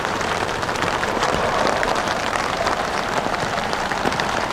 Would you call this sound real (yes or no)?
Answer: no